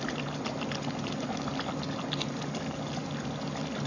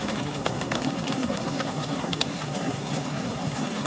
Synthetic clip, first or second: second